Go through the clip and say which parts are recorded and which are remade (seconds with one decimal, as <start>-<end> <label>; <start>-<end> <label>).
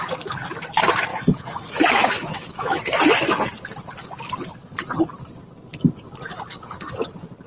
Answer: 0.0-1.1 recorded; 1.1-2.8 remade; 2.8-7.5 recorded